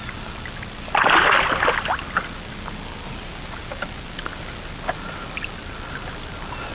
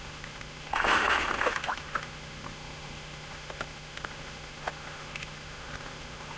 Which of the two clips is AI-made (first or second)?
second